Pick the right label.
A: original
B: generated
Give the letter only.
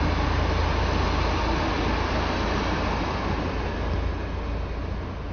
A